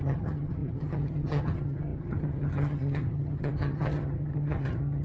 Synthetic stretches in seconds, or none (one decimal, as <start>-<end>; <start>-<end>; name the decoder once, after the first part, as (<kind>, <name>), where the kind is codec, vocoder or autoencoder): 0.0-5.0 (vocoder, HiFi-GAN)

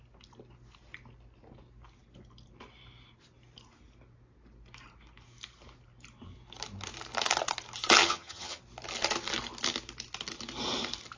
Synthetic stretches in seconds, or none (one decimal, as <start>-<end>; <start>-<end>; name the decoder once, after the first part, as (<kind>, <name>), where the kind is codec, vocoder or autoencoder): 8.0-8.6 (vocoder, HiFi-GAN)

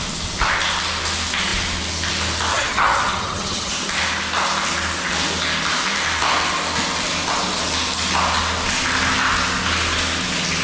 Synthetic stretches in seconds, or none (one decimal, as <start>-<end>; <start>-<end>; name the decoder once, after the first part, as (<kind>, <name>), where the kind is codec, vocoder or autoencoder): 2.5-3.7 (vocoder, HiFi-GAN)

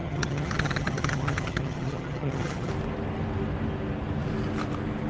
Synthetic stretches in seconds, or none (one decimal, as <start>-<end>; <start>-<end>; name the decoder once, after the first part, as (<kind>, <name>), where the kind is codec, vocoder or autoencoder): 0.0-2.7 (vocoder, HiFi-GAN)

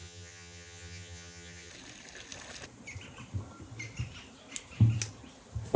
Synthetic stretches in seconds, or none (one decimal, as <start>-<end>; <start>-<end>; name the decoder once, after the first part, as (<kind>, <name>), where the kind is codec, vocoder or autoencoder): 0.0-1.7 (vocoder, HiFi-GAN)

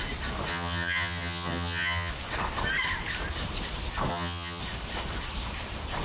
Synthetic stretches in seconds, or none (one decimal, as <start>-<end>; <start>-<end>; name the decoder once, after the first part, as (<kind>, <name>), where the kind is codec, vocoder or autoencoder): 0.5-2.1 (vocoder, HiFi-GAN); 4.1-4.6

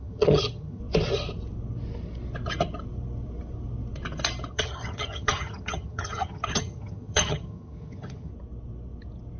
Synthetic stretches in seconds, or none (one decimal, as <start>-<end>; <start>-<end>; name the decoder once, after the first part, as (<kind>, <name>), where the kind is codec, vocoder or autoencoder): 0.0-0.8 (vocoder, HiFi-GAN); 4.5-8.3

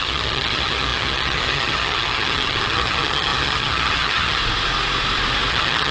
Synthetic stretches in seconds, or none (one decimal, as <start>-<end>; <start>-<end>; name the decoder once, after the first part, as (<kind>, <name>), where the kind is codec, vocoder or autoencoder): 0.0-4.4 (vocoder, HiFi-GAN); 5.5-5.9